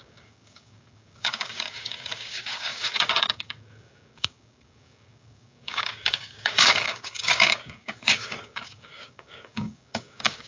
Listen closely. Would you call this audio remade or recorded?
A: remade